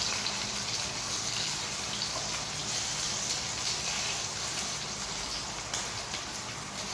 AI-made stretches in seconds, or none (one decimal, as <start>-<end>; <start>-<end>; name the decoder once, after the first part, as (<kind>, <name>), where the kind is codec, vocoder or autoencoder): 1.1-1.6 (codec, SNAC)